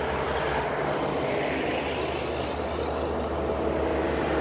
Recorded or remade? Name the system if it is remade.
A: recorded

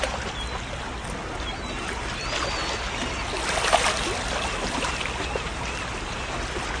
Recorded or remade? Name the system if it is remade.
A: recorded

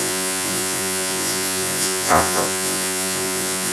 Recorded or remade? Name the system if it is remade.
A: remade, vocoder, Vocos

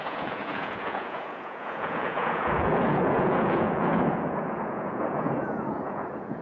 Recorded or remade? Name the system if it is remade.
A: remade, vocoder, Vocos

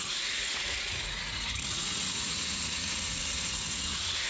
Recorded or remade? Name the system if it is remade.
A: remade, vocoder, Vocos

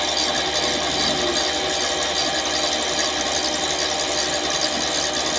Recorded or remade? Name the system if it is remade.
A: recorded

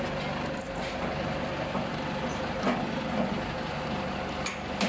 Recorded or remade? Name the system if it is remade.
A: recorded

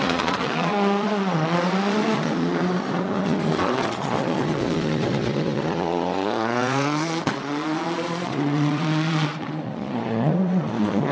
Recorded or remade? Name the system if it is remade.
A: remade, vocoder, Vocos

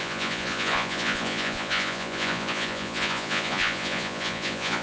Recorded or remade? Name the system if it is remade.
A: remade, vocoder, Vocos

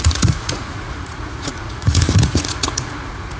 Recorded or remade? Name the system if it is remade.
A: remade, vocoder, Vocos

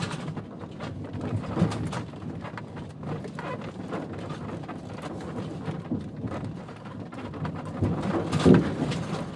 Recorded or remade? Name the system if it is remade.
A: recorded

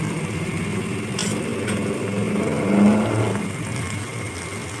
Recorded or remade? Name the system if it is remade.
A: recorded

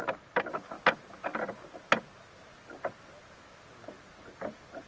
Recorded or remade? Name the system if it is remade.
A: recorded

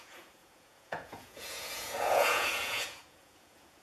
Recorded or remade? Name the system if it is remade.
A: remade, vocoder, Vocos